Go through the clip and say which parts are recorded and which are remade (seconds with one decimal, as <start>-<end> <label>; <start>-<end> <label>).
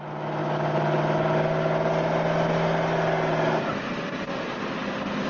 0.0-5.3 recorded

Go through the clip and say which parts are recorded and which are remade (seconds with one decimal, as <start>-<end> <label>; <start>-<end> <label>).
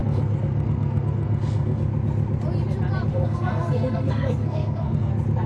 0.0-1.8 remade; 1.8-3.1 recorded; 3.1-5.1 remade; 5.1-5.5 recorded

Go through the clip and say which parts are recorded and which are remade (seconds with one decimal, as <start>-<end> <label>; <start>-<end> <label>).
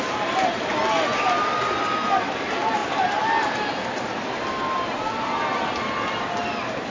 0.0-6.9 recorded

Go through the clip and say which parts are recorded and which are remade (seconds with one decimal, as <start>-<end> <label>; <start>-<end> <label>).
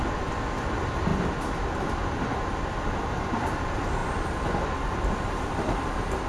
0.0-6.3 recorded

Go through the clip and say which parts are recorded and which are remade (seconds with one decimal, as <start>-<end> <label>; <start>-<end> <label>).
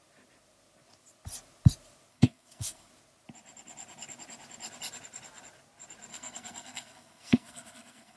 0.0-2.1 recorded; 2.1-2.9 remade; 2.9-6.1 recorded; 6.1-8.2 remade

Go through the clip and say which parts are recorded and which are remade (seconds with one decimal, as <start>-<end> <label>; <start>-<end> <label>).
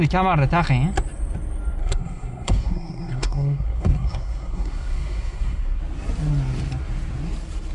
0.0-1.8 recorded; 1.8-5.8 remade; 5.8-7.7 recorded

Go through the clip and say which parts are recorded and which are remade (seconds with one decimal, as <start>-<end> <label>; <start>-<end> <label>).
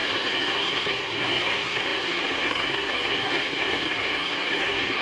0.0-5.0 remade